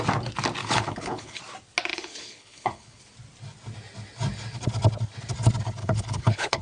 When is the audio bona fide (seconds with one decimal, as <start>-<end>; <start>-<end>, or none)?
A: 0.0-0.6; 1.4-1.9; 3.0-5.8